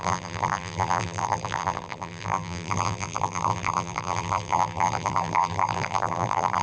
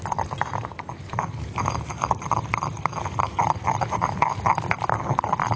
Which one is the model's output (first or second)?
first